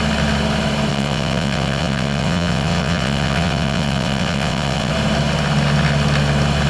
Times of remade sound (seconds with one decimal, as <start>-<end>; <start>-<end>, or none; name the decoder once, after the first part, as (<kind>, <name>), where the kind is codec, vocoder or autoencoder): 0.9-4.9 (vocoder, WaveNeXt)